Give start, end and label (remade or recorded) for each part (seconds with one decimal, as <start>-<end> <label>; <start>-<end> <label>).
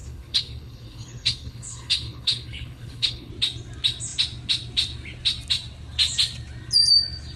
0.0-3.3 remade; 3.3-7.4 recorded